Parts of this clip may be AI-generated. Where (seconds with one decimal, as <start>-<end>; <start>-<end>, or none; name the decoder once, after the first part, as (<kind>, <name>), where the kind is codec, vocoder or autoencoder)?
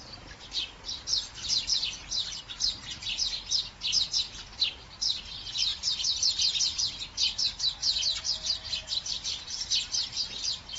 0.0-5.7 (vocoder, BigVGAN v2); 6.4-7.8; 8.9-10.8